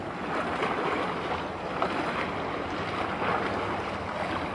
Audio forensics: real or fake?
real